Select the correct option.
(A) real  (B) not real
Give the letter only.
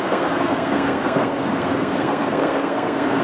B